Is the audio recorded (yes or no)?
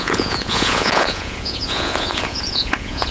no